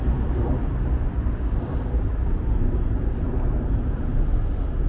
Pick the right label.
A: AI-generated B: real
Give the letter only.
B